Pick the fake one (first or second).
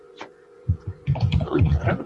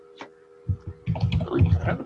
first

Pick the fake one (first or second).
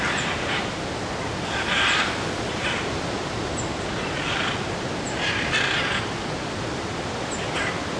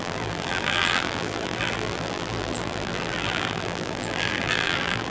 second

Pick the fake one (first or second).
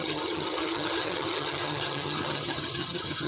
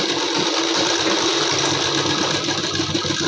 first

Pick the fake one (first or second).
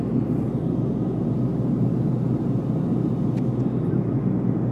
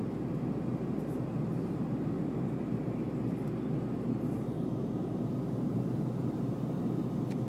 second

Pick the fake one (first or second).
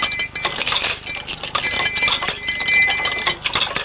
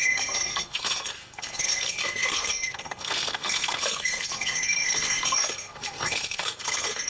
second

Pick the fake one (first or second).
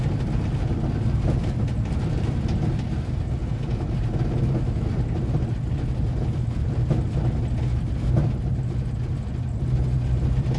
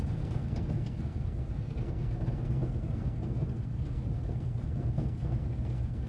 second